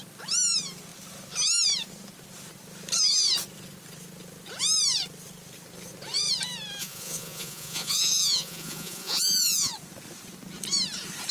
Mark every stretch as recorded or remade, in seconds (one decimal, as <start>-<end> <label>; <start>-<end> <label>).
0.0-6.8 recorded; 6.8-9.7 remade; 9.7-11.3 recorded